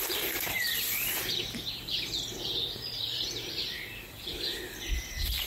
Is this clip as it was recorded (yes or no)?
no